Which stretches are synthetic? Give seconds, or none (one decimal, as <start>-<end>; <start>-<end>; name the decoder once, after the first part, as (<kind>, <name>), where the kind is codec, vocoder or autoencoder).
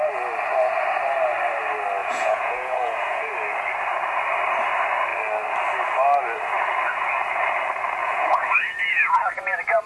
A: 2.0-3.3 (vocoder, Vocos); 8.0-9.2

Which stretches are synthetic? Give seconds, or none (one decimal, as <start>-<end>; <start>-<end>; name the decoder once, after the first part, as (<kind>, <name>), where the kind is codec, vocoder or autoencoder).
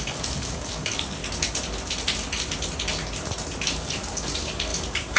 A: 0.0-1.2 (codec, DAC); 3.6-5.2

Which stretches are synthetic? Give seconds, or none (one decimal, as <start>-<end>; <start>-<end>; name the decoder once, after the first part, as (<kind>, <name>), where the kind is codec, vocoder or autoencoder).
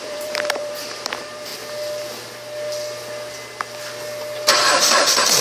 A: 0.0-1.5 (vocoder, BigVGAN v2); 4.7-5.4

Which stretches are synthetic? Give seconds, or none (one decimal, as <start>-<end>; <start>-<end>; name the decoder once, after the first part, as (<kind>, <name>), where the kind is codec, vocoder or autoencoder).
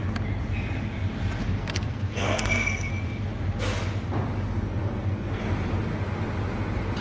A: 1.4-2.9 (codec, SNAC); 4.8-5.4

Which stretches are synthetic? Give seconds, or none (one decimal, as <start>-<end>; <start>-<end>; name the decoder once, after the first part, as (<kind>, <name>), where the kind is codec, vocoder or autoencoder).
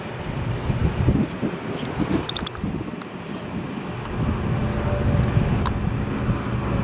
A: none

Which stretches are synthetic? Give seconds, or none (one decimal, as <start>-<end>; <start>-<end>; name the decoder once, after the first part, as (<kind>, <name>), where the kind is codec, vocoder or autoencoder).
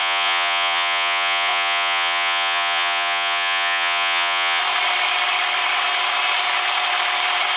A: 0.0-4.6 (vocoder, Vocos)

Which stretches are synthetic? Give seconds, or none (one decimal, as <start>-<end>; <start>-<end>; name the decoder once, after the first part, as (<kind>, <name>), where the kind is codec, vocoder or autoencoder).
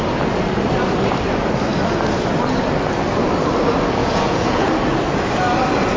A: 4.0-4.7 (vocoder, Vocos)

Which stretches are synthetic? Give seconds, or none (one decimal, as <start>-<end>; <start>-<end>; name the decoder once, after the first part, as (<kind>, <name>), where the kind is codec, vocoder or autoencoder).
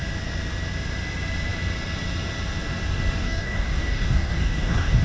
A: 3.2-5.0 (codec, DAC)